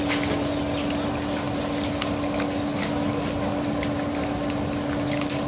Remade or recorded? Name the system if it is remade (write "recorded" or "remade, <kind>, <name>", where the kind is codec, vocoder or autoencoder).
recorded